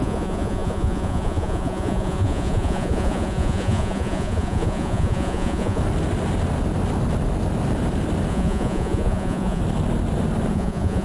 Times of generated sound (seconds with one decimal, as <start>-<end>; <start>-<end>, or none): 0.0-5.8; 8.3-9.6; 10.5-11.0